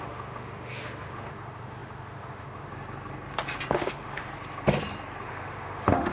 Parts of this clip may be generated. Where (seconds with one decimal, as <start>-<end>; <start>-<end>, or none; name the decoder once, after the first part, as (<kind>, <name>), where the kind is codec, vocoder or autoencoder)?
0.0-2.7 (autoencoder, DAC-VAE); 3.7-4.3; 5.2-6.1

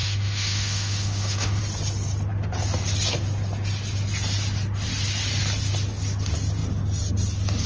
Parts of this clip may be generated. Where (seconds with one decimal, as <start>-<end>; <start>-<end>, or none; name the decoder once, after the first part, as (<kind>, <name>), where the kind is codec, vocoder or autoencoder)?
0.0-1.6 (autoencoder, DAC-VAE)

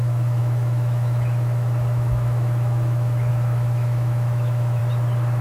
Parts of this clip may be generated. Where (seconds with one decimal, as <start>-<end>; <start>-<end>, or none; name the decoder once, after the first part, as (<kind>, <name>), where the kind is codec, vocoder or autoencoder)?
0.0-4.8 (autoencoder, DAC-VAE)

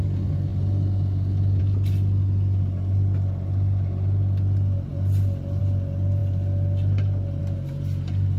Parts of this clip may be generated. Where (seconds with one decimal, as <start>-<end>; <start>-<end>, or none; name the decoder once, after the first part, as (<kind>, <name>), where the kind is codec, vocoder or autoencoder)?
none

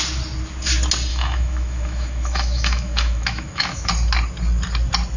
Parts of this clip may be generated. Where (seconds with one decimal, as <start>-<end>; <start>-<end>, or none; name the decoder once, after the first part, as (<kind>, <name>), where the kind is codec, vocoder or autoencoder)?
1.1-3.9 (autoencoder, DAC-VAE)

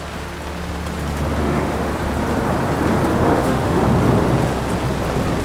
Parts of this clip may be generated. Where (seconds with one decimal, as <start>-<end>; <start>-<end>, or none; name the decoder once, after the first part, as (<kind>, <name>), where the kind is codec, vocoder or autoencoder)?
1.4-1.9 (autoencoder, DAC-VAE); 3.1-3.8

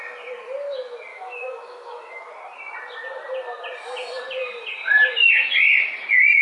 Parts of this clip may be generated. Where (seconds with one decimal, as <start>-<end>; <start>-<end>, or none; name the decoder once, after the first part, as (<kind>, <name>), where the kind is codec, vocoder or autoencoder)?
1.1-2.3 (autoencoder, DAC-VAE)

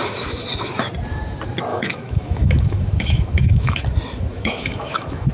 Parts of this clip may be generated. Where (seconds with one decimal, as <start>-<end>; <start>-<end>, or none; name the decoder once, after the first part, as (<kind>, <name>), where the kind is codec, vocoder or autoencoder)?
1.7-3.8 (autoencoder, DAC-VAE); 4.3-5.3